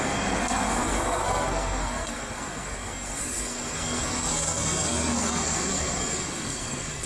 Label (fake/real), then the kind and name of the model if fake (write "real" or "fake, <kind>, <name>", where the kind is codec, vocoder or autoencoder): fake, codec, SNAC